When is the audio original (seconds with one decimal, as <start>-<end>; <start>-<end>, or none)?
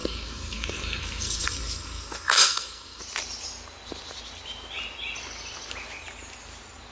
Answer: 3.0-6.9